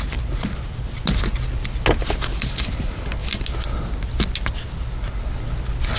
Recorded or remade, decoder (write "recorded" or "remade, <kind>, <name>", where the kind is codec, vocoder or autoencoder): recorded